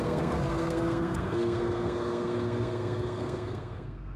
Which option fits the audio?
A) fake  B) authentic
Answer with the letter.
A